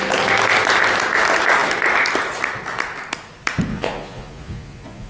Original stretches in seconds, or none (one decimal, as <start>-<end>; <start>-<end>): 0.0-3.7